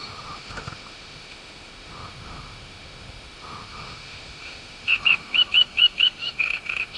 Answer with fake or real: fake